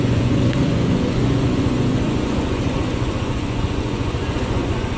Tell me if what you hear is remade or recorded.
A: remade